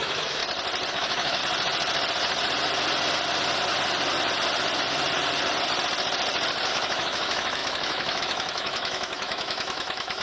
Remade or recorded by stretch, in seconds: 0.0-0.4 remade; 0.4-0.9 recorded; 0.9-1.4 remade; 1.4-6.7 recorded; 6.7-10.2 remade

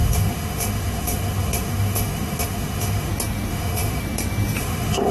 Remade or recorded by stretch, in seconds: 0.0-3.1 remade; 3.1-3.5 recorded; 3.5-4.0 remade; 4.0-4.6 recorded; 4.6-5.1 remade

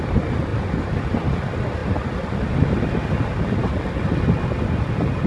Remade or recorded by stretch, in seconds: 0.0-5.3 recorded

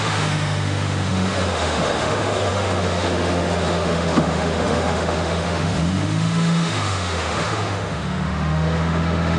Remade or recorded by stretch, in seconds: 0.0-9.4 remade

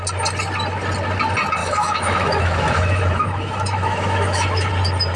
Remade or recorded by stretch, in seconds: 0.0-1.6 recorded; 1.6-4.7 remade; 4.7-5.2 recorded

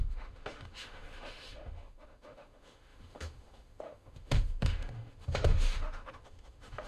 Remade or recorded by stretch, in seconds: 0.0-6.9 remade

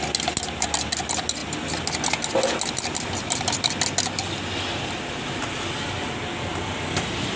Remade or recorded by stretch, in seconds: 0.0-7.4 recorded